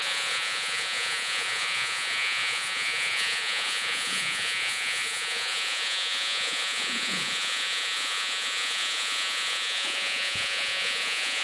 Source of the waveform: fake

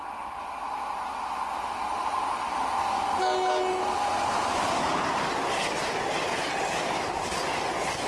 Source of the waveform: real